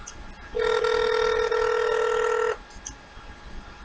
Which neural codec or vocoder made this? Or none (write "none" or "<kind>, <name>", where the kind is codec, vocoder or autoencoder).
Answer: none